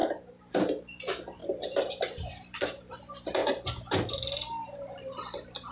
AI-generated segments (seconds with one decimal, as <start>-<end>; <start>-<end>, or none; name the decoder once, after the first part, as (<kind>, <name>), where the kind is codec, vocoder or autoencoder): 0.5-3.4 (vocoder, BigVGAN v2); 4.0-5.7